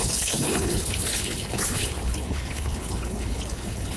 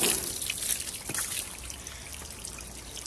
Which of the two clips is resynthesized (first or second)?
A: first